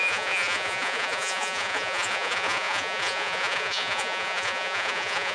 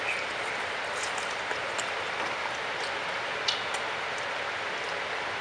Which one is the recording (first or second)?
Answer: second